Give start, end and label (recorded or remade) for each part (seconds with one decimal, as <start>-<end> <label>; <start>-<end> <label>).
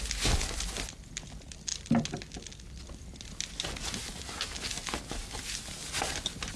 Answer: 0.0-6.6 recorded